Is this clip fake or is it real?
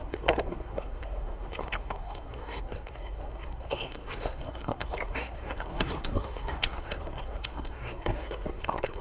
fake